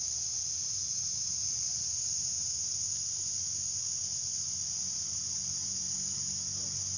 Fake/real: real